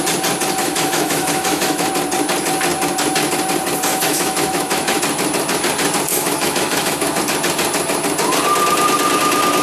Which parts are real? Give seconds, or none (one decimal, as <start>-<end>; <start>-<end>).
0.0-0.6; 1.9-3.9; 5.0-6.1; 7.2-9.6